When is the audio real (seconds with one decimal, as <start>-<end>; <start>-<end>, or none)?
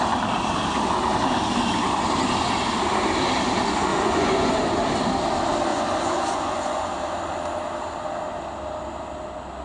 0.0-3.9; 4.5-5.7; 6.9-9.6